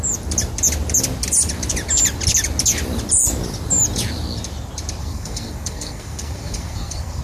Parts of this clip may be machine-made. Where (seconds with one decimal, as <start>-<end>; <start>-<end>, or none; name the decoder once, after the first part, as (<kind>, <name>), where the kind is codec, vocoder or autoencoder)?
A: 5.0-7.2 (codec, SNAC)